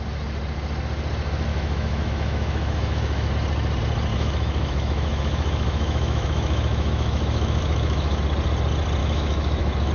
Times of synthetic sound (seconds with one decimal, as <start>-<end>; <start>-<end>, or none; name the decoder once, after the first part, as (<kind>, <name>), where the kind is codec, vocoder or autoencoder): 1.5-3.3 (autoencoder, DAC-VAE); 4.1-8.2; 9.0-9.9